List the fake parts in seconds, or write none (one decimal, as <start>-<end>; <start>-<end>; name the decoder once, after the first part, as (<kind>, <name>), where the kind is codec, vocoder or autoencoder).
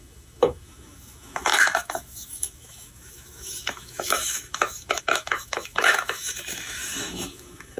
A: 0.0-7.8 (autoencoder, DAC-VAE)